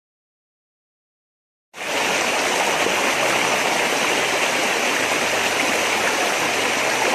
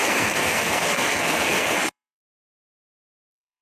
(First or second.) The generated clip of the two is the second